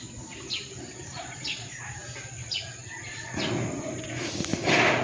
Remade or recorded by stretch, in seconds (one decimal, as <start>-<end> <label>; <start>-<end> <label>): 0.0-1.1 recorded; 1.1-1.8 remade; 1.8-5.0 recorded

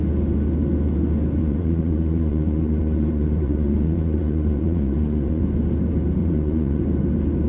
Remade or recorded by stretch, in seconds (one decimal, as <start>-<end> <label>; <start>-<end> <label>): 0.0-1.4 recorded; 1.4-5.4 remade; 5.4-6.2 recorded; 6.2-6.8 remade; 6.8-7.5 recorded